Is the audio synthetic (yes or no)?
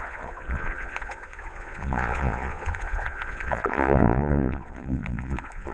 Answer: yes